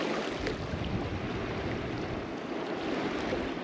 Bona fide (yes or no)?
yes